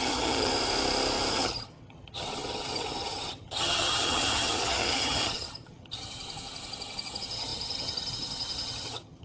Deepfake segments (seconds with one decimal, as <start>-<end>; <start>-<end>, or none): 0.0-0.5; 1.3-9.2